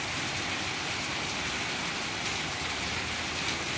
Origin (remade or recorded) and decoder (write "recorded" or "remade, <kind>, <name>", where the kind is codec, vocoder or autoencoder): recorded